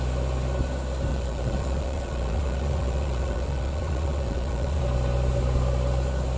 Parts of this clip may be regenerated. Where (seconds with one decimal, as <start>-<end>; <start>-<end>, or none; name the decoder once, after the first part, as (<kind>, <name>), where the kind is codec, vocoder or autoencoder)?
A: 1.1-4.8 (vocoder, Vocos)